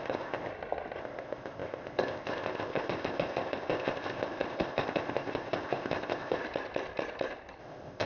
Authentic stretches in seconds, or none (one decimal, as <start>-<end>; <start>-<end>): 0.5-1.0; 6.4-7.6